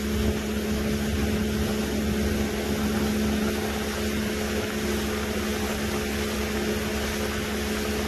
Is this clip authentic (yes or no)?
yes